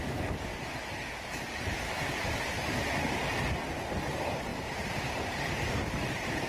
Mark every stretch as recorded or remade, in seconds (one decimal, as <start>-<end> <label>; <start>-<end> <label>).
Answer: 0.0-0.5 remade; 0.5-3.3 recorded; 3.3-6.5 remade